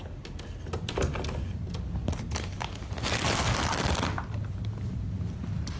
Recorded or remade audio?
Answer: recorded